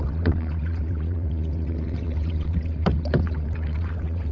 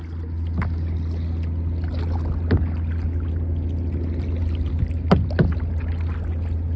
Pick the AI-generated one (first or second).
first